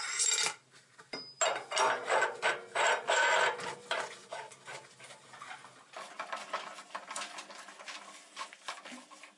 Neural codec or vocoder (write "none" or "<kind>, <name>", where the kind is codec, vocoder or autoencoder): none